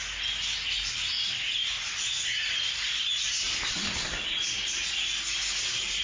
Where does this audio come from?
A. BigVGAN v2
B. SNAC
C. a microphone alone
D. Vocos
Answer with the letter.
C